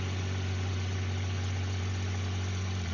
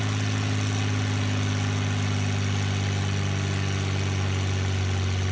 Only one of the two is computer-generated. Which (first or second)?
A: first